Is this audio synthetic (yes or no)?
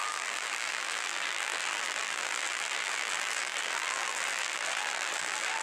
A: yes